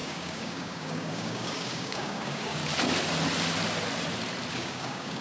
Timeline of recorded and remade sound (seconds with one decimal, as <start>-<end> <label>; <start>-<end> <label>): 0.0-2.6 remade; 2.6-4.5 recorded; 4.5-5.2 remade